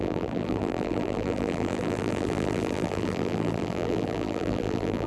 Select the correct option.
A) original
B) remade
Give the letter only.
B